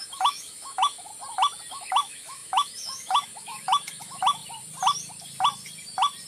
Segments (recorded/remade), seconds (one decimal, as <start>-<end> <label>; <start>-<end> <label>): 0.0-1.1 remade; 1.1-1.7 recorded; 1.7-4.4 remade; 4.4-6.3 recorded